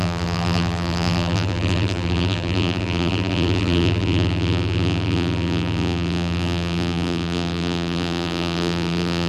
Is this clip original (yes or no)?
no